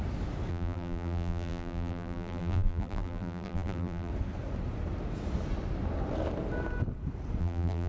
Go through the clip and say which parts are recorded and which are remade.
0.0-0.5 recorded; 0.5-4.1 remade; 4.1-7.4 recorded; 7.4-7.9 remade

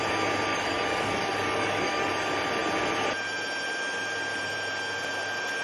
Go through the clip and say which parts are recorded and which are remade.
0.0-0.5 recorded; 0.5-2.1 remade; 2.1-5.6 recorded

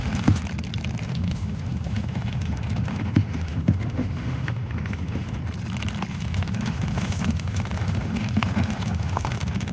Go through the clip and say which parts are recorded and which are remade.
0.0-0.4 remade; 0.4-1.0 recorded; 1.0-5.4 remade; 5.4-6.1 recorded; 6.1-9.7 remade

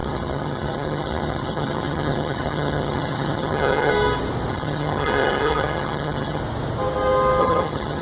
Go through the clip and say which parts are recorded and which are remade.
0.0-3.9 remade; 3.9-4.5 recorded; 4.5-6.4 remade; 6.4-7.4 recorded; 7.4-8.0 remade

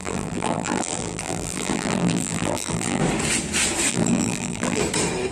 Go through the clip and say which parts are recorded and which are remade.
0.0-3.0 remade; 3.0-3.9 recorded; 3.9-4.8 remade; 4.8-5.3 recorded

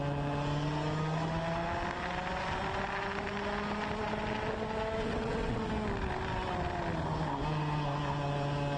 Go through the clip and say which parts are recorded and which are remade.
0.0-5.0 recorded; 5.0-5.7 remade; 5.7-8.8 recorded

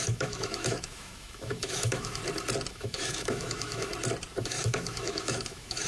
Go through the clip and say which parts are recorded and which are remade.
0.0-2.2 remade; 2.2-2.7 recorded; 2.7-3.9 remade; 3.9-4.4 recorded; 4.4-5.9 remade